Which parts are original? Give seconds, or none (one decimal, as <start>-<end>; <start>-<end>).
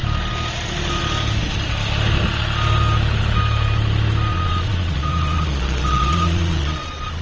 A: 0.0-4.3